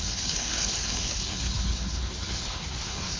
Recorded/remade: remade